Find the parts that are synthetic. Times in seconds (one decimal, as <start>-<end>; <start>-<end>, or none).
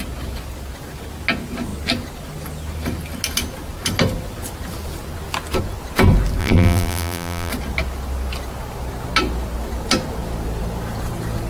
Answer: 6.4-7.5